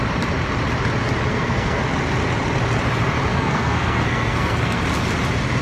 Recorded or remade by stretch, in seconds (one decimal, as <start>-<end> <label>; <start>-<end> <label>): 0.0-1.3 recorded; 1.3-1.8 remade; 1.8-3.3 recorded; 3.3-4.8 remade; 4.8-5.6 recorded